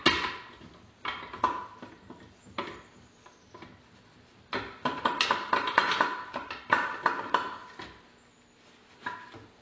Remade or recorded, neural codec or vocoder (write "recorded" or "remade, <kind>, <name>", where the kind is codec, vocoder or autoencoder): recorded